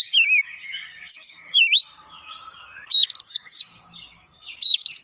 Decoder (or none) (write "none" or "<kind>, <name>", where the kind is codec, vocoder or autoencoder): codec, DAC